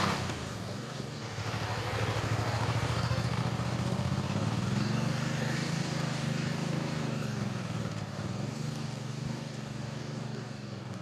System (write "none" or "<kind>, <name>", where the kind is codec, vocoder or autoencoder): codec, DAC